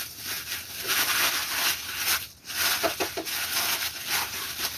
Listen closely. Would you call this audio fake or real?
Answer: real